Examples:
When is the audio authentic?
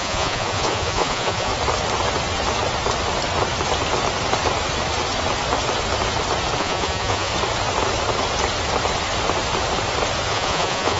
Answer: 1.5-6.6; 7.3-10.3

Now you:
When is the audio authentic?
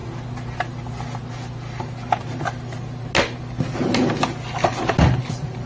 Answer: 0.0-5.7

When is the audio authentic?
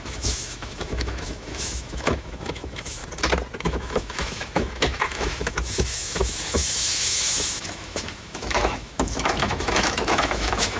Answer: 3.0-3.6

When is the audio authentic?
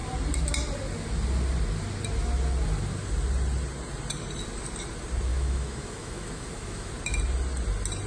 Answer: 0.0-5.3; 6.9-8.1